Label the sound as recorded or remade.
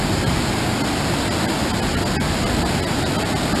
recorded